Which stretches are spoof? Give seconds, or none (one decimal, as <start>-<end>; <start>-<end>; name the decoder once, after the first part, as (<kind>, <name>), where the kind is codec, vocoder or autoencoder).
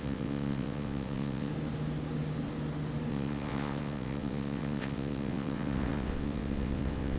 0.0-1.5 (vocoder, WaveNeXt); 3.1-7.2